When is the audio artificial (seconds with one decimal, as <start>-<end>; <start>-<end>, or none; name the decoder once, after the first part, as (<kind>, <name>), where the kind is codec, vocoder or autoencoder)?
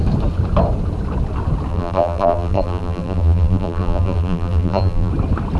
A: 1.7-5.1 (vocoder, BigVGAN v2)